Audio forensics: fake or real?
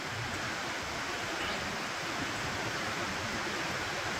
fake